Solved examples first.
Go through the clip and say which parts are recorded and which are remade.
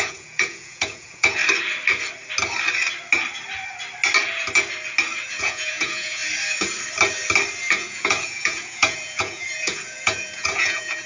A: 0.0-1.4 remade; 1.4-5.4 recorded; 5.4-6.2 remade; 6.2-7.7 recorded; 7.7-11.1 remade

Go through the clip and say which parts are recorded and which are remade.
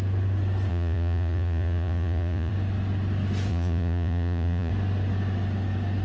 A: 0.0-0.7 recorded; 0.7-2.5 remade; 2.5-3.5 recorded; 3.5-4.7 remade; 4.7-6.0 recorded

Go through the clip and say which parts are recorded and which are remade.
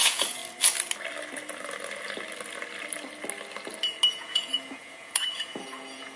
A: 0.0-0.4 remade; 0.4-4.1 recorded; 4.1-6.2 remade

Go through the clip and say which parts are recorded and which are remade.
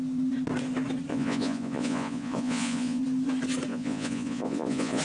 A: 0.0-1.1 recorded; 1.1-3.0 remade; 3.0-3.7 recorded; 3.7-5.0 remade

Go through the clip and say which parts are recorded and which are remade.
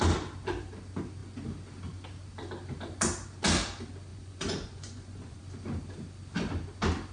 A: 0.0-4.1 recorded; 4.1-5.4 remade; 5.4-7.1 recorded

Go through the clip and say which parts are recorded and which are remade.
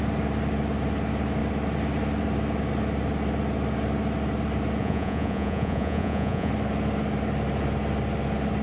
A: 0.0-4.8 recorded; 4.8-6.5 remade; 6.5-8.6 recorded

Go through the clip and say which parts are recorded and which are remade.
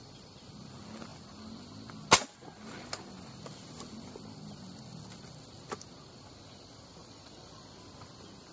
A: 0.0-7.0 recorded; 7.0-7.7 remade; 7.7-8.5 recorded